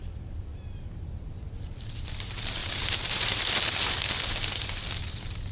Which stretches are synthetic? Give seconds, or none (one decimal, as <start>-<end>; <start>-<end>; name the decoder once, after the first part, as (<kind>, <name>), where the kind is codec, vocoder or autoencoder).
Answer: 2.6-3.4 (vocoder, BigVGAN v2)